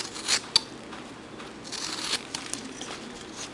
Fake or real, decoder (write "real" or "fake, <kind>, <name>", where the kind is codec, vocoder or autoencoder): real